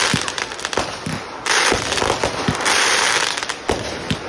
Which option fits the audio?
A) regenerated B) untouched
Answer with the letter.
B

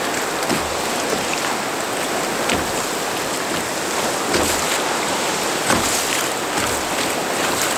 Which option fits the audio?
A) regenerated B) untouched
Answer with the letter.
B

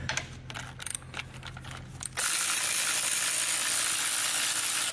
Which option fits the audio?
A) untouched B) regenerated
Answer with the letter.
A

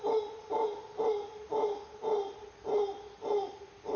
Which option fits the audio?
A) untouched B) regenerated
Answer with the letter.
A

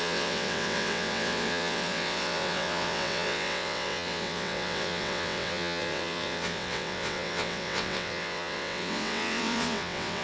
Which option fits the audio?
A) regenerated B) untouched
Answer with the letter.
A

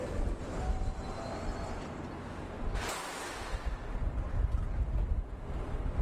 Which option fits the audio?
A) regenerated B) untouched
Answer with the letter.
B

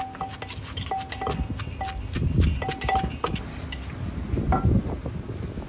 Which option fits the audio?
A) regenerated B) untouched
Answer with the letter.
B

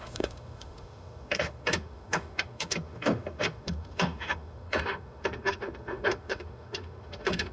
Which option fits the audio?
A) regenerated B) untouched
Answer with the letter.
A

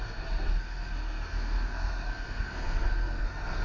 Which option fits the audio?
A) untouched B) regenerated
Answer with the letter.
B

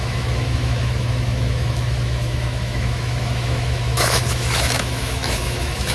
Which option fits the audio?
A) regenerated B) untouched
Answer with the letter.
A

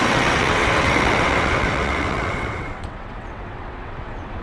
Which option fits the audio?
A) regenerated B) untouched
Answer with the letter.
A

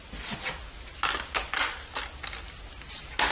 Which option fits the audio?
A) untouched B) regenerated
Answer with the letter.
A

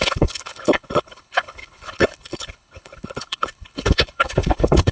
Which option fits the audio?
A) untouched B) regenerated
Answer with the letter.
B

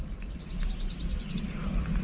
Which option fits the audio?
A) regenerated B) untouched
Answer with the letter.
B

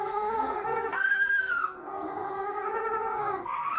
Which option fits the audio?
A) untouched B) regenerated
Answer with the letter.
B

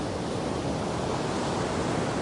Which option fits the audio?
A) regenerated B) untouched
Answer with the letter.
B